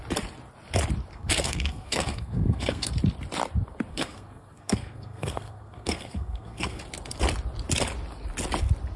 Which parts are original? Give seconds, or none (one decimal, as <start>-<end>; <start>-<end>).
0.0-1.1; 2.9-3.9; 6.8-9.0